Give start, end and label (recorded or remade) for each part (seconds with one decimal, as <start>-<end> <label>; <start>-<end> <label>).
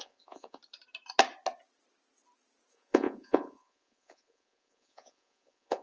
0.0-0.6 remade; 0.6-2.7 recorded; 2.7-5.8 remade